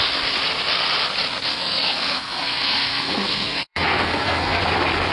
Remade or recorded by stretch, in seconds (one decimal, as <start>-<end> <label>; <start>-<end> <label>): 0.0-1.5 recorded; 1.5-4.6 remade; 4.6-5.1 recorded